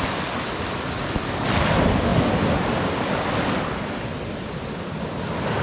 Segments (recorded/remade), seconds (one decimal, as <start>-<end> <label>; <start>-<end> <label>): 0.0-5.6 recorded